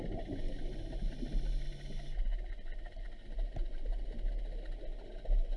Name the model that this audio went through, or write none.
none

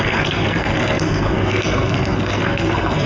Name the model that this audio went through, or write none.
codec, SNAC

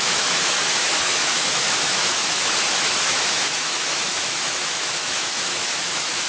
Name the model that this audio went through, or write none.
autoencoder, DAC-VAE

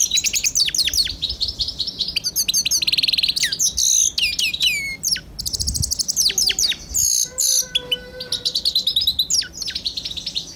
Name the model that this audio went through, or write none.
none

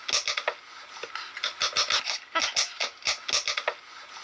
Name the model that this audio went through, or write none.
none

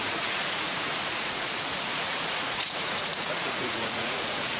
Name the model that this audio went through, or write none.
vocoder, Vocos